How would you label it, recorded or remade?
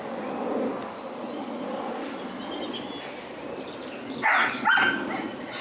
recorded